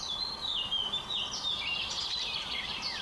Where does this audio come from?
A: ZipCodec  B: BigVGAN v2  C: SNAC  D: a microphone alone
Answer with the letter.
D